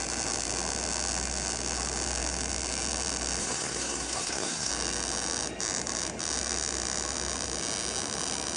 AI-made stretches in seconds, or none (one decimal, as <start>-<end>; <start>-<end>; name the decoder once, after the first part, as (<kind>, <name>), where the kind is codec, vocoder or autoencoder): 3.4-4.7 (codec, SNAC)